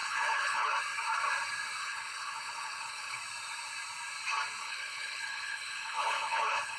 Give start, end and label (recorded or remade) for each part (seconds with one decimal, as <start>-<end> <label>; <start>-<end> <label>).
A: 0.0-0.7 remade; 0.7-1.8 recorded; 1.8-3.2 remade; 3.2-4.6 recorded; 4.6-6.8 remade